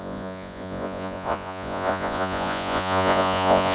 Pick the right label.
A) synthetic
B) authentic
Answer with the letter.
A